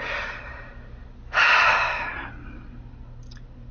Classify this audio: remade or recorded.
recorded